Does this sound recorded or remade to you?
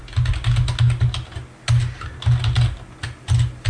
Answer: recorded